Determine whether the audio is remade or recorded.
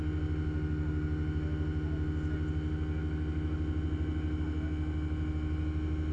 recorded